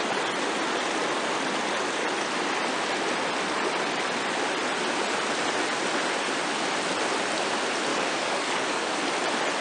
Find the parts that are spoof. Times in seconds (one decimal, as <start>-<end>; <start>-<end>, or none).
7.9-9.0